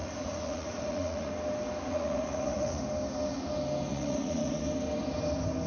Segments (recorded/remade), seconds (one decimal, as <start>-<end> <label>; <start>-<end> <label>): 0.0-1.3 remade; 1.3-1.9 recorded; 1.9-2.8 remade; 2.8-3.9 recorded; 3.9-4.6 remade; 4.6-5.7 recorded